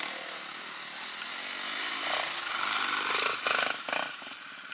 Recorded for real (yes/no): yes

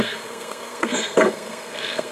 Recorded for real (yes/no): no